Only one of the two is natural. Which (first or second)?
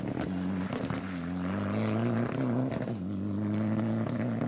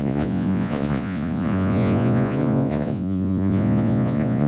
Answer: first